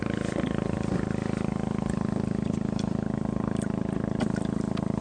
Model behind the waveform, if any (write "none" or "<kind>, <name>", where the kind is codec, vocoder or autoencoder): none